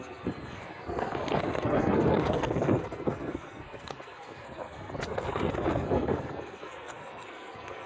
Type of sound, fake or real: fake